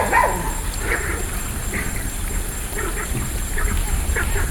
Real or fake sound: real